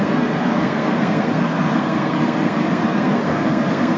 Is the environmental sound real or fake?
fake